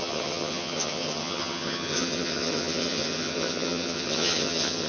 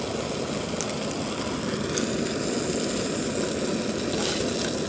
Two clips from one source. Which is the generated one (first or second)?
first